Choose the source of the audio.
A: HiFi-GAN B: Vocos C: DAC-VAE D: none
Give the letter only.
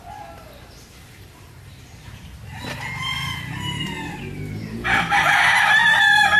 D